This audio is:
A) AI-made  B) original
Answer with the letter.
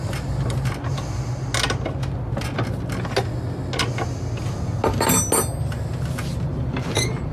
B